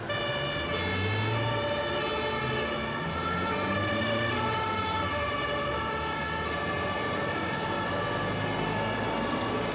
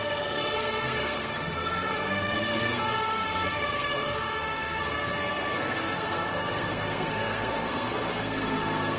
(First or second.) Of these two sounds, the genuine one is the first